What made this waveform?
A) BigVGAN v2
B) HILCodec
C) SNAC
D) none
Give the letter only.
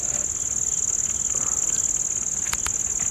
D